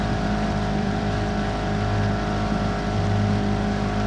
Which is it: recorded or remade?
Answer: remade